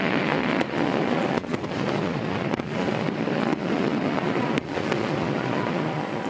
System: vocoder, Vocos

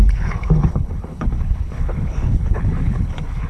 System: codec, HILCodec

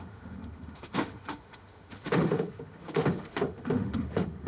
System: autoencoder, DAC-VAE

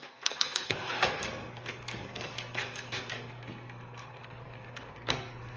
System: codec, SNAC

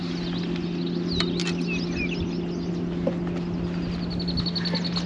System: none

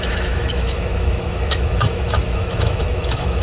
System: autoencoder, DAC-VAE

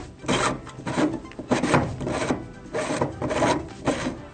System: none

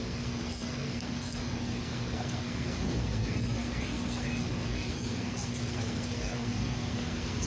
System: codec, SNAC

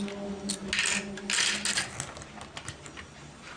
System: none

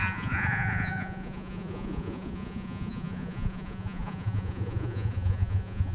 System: vocoder, Vocos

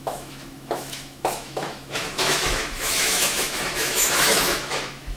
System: autoencoder, DAC-VAE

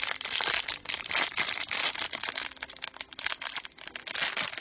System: none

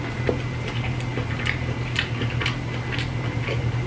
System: none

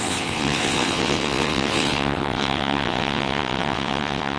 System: vocoder, WaveNeXt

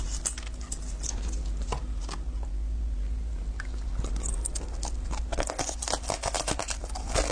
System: none